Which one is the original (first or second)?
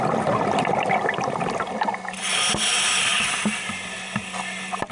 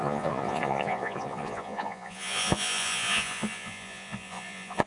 first